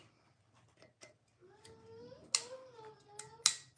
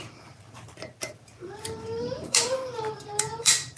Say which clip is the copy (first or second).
second